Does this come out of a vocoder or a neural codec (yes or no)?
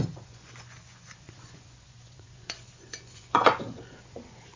yes